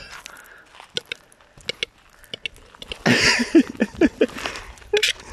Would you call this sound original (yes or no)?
yes